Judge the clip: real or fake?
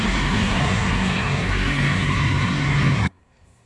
fake